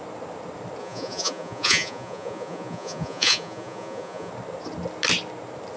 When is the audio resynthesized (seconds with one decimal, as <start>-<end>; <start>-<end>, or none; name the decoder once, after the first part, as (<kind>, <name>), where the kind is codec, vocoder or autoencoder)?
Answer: 0.8-4.3 (vocoder, Vocos)